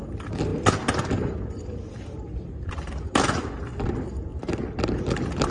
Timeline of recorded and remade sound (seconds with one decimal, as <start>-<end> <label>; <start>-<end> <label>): 0.0-5.5 recorded